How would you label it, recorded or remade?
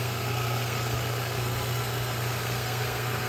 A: remade